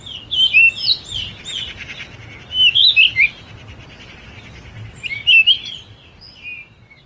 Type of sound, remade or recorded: recorded